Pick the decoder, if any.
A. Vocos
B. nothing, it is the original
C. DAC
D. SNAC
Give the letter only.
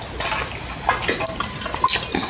B